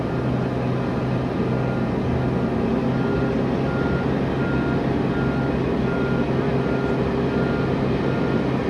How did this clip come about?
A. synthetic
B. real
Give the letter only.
B